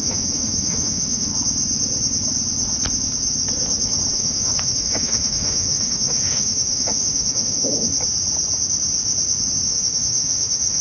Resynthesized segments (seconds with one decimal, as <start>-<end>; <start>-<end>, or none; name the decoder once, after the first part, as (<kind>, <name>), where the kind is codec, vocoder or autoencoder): 0.0-1.3 (autoencoder, DAC-VAE); 4.1-7.9; 9.7-10.8